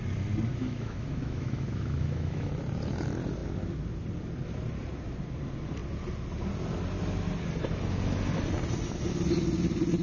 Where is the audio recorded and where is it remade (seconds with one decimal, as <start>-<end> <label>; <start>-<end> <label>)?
0.0-0.5 recorded; 0.5-2.5 remade; 2.5-10.0 recorded